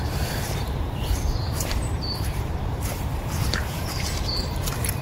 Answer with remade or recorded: remade